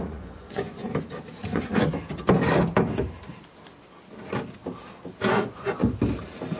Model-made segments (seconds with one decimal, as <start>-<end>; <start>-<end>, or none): 0.0-0.8; 1.4-1.9; 5.3-5.8